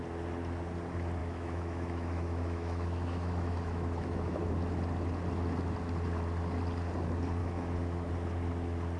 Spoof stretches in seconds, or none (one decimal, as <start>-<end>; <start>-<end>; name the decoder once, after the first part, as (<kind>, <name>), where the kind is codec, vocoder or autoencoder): 1.2-4.4 (autoencoder, DAC-VAE); 7.4-8.1